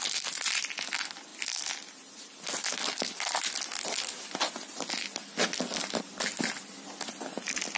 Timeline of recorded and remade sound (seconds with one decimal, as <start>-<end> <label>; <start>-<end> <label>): 0.0-7.8 recorded